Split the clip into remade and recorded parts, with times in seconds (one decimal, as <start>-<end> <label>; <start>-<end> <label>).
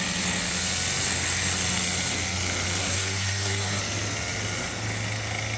0.0-2.8 recorded; 2.8-3.8 remade; 3.8-5.6 recorded